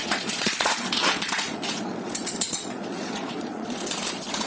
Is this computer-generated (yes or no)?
yes